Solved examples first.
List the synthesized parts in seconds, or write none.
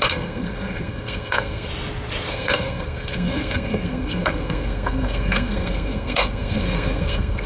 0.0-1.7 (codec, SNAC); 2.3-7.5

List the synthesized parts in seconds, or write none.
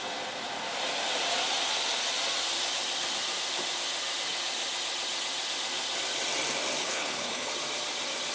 6.8-7.5 (codec, HILCodec)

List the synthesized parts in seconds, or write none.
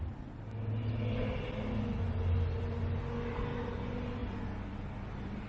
none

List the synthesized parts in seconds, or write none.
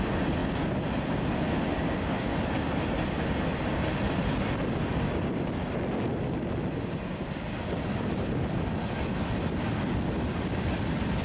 none